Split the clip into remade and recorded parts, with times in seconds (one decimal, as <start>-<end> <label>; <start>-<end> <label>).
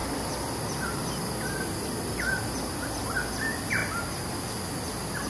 0.0-5.3 recorded